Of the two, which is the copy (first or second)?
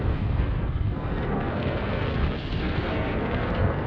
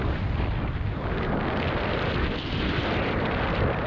first